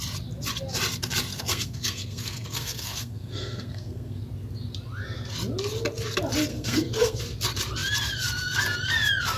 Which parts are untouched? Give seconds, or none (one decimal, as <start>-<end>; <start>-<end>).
0.0-1.3; 4.2-6.5; 7.2-9.4